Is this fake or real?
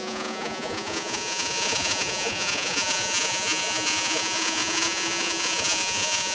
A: fake